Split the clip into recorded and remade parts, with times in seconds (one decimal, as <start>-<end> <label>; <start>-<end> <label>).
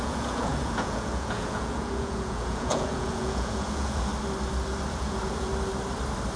0.0-4.1 remade; 4.1-4.9 recorded; 4.9-5.5 remade; 5.5-6.4 recorded